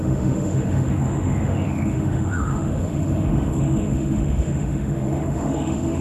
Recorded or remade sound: remade